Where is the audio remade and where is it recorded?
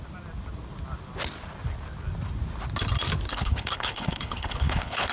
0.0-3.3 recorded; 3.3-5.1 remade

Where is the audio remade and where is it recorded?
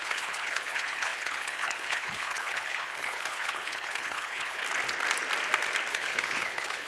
0.0-4.6 remade; 4.6-5.9 recorded; 5.9-6.9 remade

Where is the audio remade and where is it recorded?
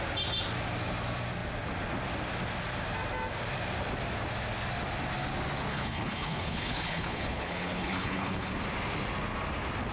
0.0-5.7 recorded; 5.7-8.5 remade; 8.5-9.9 recorded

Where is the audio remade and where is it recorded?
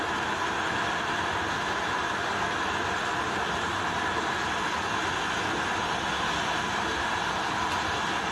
0.0-8.3 recorded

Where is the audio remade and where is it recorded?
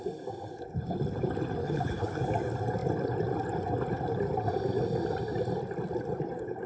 0.0-1.6 recorded; 1.6-2.2 remade; 2.2-6.7 recorded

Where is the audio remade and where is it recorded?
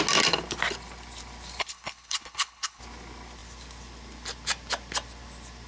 0.0-1.6 recorded; 1.6-2.8 remade; 2.8-5.7 recorded